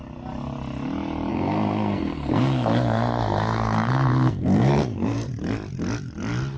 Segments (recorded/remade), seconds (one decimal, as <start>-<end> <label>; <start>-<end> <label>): 0.0-1.3 recorded; 1.3-5.3 remade; 5.3-6.6 recorded